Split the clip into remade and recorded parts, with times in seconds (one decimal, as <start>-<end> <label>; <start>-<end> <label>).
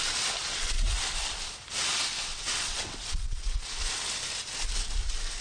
0.0-0.4 recorded; 0.4-1.0 remade; 1.0-2.3 recorded; 2.3-3.7 remade; 3.7-5.4 recorded